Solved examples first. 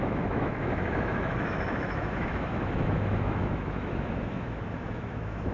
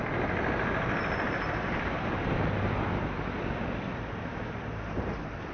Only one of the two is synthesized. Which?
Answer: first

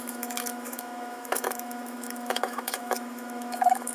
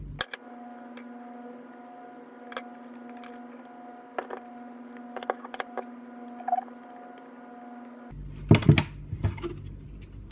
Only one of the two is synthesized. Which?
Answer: first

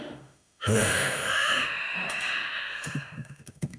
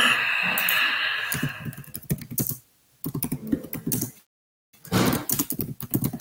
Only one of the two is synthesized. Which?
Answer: first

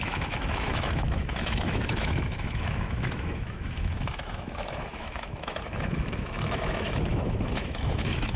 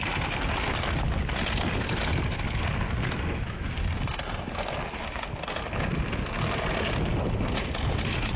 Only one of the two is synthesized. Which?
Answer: first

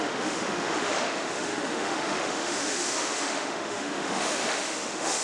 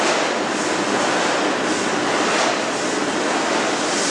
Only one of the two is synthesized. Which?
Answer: first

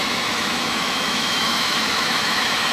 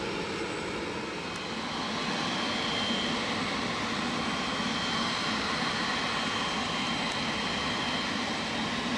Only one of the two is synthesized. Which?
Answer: first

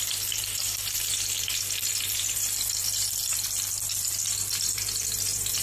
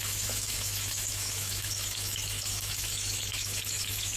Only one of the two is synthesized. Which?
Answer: second